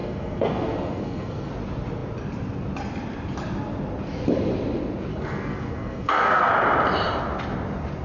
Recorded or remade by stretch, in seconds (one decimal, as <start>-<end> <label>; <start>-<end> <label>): 0.0-1.5 remade; 1.5-5.1 recorded; 5.1-6.5 remade; 6.5-8.0 recorded